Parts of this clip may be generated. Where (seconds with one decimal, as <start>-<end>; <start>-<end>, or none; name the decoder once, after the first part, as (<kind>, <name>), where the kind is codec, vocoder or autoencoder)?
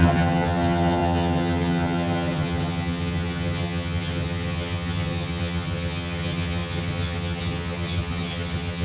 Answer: 0.0-8.8 (vocoder, HiFi-GAN)